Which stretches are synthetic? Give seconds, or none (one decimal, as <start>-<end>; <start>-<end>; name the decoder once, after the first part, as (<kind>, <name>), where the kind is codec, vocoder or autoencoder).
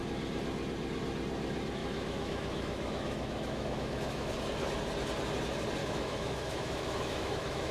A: 1.8-4.3 (autoencoder, DAC-VAE); 5.8-7.7